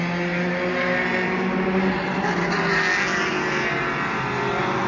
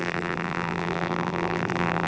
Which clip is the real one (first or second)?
first